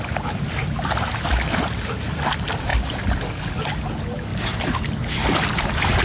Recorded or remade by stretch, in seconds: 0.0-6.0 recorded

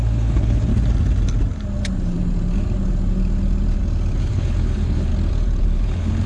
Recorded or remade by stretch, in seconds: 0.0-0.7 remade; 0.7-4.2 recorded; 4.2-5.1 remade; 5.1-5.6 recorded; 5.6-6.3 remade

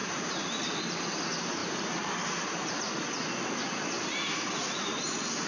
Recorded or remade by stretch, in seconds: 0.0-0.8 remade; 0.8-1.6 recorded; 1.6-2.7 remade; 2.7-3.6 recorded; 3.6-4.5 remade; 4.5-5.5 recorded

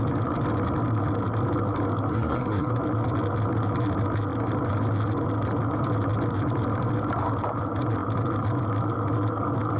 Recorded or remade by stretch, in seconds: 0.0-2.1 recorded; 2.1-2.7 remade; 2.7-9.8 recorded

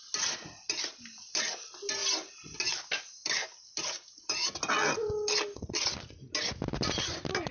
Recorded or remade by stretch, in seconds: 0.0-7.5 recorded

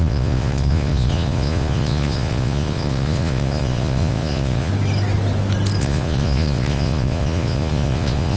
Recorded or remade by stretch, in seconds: 0.0-4.7 remade; 4.7-5.8 recorded; 5.8-8.4 remade